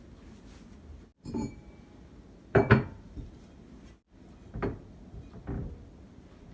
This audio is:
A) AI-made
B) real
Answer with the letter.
B